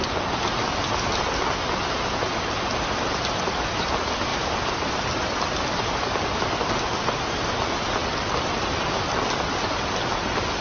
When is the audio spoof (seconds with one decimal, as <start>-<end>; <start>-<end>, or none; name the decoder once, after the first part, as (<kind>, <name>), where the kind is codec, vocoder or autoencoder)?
4.3-5.0 (vocoder, BigVGAN v2)